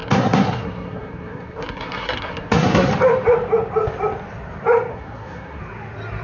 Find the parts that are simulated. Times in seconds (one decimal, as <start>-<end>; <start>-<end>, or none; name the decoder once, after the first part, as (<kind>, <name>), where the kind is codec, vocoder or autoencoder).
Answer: 0.0-2.9 (codec, SNAC); 4.9-5.6